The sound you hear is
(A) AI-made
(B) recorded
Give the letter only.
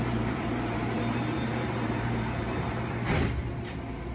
A